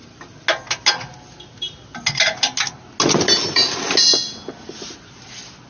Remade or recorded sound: recorded